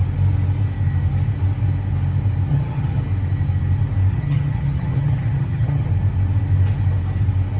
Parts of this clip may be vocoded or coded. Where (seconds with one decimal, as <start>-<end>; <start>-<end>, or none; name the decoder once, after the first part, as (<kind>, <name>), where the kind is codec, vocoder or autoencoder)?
2.5-3.0 (vocoder, HiFi-GAN); 4.1-5.9